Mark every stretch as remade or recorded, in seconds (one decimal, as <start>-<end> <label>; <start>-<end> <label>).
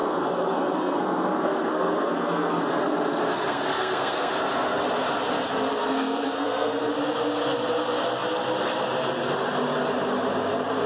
0.0-2.6 remade; 2.6-3.5 recorded; 3.5-4.3 remade; 4.3-5.8 recorded; 5.8-6.9 remade; 6.9-10.9 recorded